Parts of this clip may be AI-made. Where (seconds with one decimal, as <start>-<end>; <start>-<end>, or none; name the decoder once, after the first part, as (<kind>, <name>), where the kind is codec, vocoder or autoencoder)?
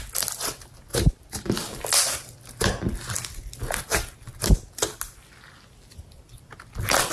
0.9-2.5 (vocoder, BigVGAN v2)